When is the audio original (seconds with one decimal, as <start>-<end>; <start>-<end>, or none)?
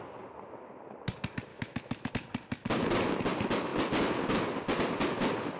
0.0-1.5; 2.1-5.6